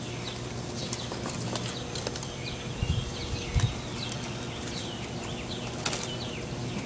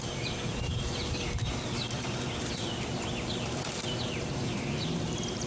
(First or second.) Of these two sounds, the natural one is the first